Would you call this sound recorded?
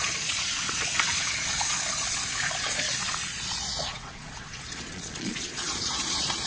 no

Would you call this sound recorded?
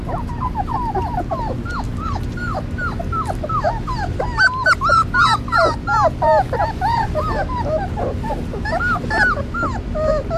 yes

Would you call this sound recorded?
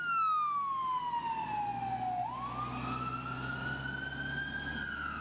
yes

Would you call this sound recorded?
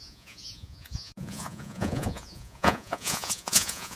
no